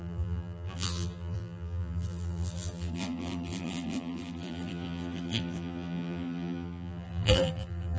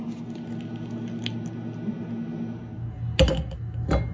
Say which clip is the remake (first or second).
first